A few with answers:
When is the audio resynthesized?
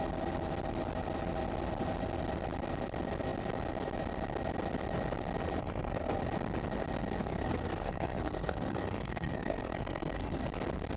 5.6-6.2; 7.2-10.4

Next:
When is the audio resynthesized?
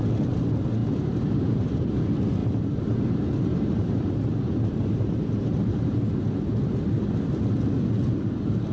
0.8-1.9; 2.4-6.4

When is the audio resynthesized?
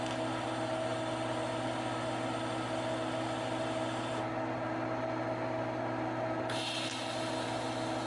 none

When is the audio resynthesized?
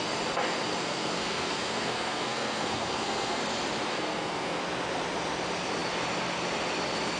0.8-3.4; 3.9-4.6